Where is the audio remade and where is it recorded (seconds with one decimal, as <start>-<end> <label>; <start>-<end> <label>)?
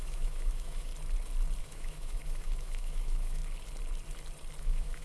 0.0-0.9 remade; 0.9-1.6 recorded; 1.6-3.4 remade; 3.4-4.6 recorded; 4.6-5.0 remade